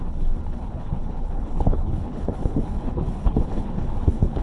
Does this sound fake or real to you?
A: fake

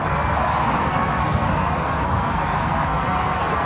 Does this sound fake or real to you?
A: fake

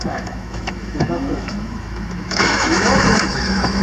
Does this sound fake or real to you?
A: fake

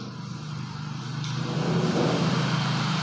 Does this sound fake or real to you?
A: real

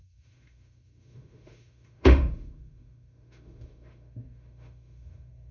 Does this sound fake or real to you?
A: fake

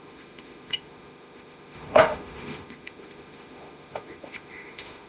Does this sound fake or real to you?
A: fake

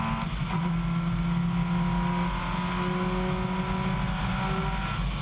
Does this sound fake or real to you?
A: real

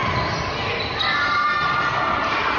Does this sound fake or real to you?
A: real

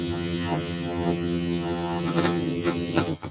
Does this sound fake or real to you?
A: fake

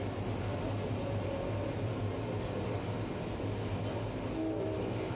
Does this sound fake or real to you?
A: real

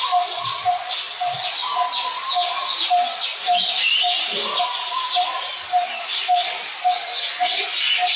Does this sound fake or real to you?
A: real